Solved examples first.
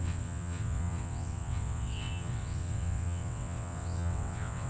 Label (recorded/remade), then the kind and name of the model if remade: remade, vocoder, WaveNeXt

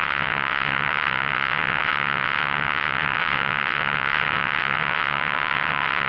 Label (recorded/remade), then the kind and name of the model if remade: remade, vocoder, WaveNeXt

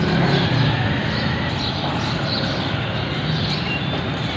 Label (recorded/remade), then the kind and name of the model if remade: recorded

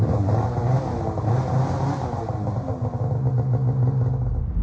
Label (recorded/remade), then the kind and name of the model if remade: recorded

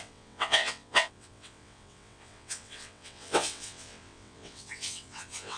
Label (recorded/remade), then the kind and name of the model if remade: remade, vocoder, WaveNeXt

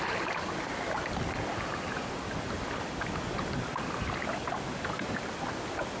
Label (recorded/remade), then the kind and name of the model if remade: recorded